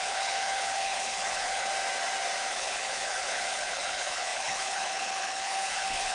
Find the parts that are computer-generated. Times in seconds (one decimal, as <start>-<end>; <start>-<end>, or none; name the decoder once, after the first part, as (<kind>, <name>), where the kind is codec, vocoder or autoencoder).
0.0-1.7 (codec, HILCodec); 2.5-6.1